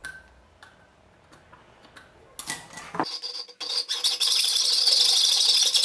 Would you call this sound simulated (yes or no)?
no